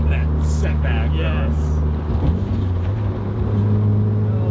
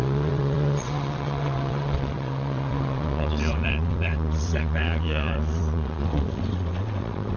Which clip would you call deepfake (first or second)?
second